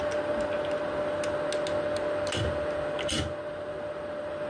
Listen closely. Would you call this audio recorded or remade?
recorded